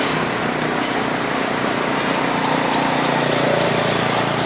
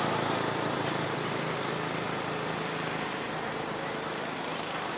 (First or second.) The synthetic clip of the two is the first